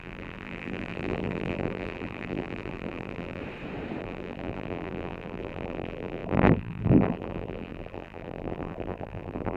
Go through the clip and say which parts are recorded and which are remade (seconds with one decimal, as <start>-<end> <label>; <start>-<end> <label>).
0.0-3.4 remade; 3.4-4.0 recorded; 4.0-9.6 remade